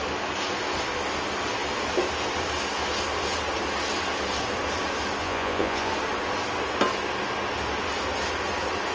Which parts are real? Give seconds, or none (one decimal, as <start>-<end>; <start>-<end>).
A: 0.0-5.2; 5.9-8.9